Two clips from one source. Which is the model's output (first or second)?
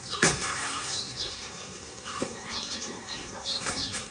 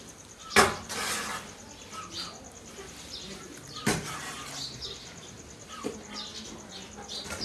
first